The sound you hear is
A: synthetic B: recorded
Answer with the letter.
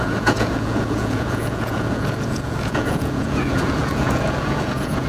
A